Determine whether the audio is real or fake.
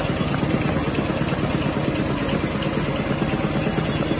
real